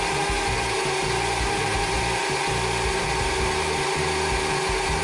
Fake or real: real